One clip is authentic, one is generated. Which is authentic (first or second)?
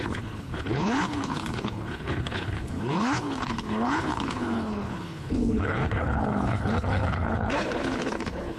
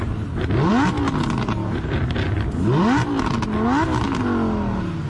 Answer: second